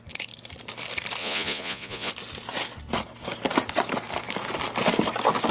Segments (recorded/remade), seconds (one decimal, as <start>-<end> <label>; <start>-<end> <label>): 0.0-1.2 recorded; 1.2-2.1 remade; 2.1-5.5 recorded